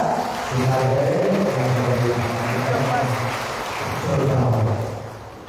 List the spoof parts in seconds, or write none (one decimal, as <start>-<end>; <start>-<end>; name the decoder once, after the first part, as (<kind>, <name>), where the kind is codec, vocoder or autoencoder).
0.9-3.6 (vocoder, BigVGAN v2); 4.1-5.1